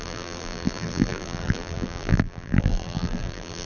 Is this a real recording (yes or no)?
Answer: no